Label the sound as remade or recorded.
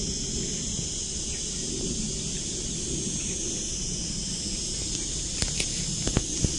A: recorded